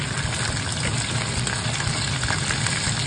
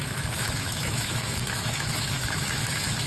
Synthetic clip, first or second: second